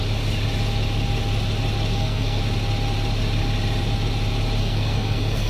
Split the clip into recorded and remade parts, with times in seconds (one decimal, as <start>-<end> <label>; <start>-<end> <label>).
0.0-1.9 recorded; 1.9-2.4 remade; 2.4-4.6 recorded; 4.6-5.5 remade